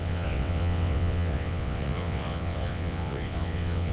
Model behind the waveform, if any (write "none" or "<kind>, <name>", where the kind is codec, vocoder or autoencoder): vocoder, WaveNeXt